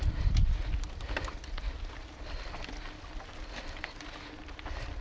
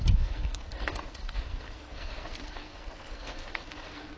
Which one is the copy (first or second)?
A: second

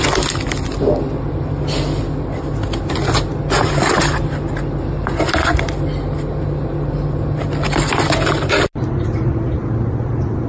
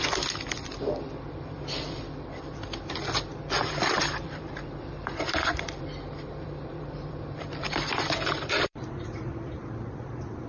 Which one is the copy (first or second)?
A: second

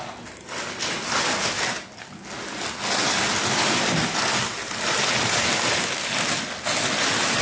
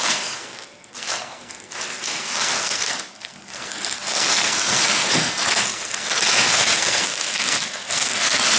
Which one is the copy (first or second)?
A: second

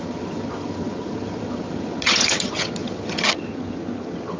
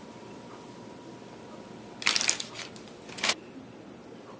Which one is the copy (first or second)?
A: first